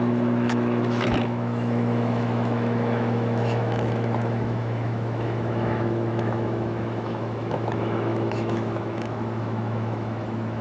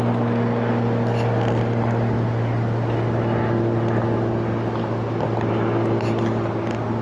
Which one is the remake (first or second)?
first